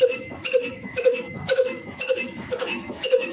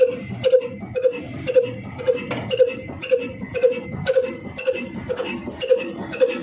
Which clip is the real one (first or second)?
second